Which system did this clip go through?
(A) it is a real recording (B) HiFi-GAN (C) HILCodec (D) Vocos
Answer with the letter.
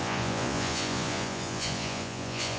D